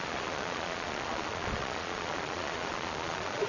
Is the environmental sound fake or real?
fake